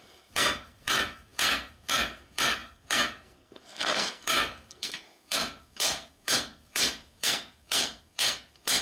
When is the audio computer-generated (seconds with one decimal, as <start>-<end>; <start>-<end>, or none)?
0.0-8.8